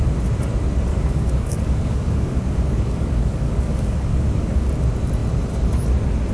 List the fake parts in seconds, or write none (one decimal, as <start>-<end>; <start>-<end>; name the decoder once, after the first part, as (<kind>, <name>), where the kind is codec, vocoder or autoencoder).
0.9-4.7 (codec, DAC)